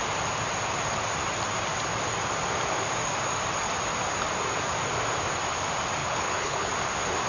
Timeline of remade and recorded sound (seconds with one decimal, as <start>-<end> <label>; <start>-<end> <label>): 0.0-6.0 recorded; 6.0-6.7 remade; 6.7-7.3 recorded

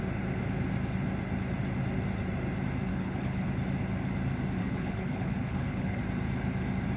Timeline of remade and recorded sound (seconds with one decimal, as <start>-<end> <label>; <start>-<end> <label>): 0.0-2.9 recorded; 2.9-3.5 remade; 3.5-4.6 recorded; 4.6-6.0 remade; 6.0-7.0 recorded

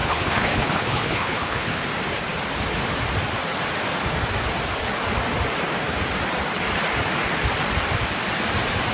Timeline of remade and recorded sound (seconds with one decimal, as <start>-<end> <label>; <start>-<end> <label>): 0.0-1.8 remade; 1.8-8.9 recorded

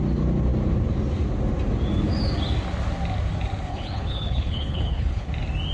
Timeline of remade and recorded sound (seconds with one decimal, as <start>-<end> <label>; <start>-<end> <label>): 0.0-3.7 recorded; 3.7-5.3 remade; 5.3-5.7 recorded